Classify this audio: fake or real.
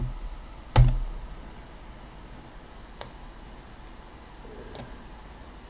real